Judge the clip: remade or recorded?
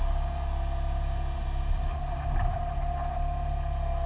recorded